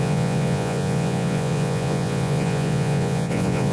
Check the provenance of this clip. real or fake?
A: fake